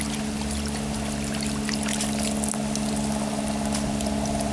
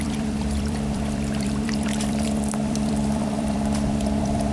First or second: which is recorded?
first